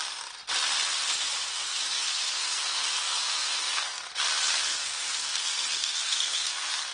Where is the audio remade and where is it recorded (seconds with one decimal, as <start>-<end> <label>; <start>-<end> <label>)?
0.0-1.5 recorded; 1.5-4.1 remade; 4.1-4.5 recorded; 4.5-6.9 remade